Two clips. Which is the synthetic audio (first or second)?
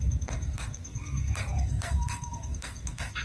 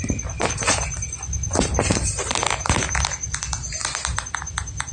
first